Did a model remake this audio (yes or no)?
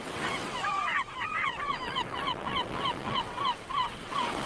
yes